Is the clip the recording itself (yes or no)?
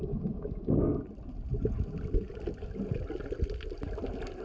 yes